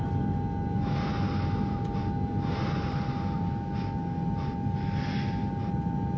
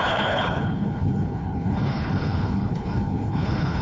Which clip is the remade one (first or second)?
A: second